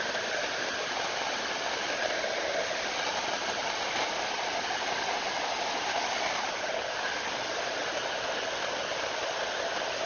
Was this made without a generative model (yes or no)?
yes